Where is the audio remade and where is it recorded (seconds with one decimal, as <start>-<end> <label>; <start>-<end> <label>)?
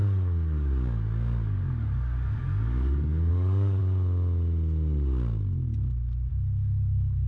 0.0-3.8 remade; 3.8-6.3 recorded; 6.3-7.3 remade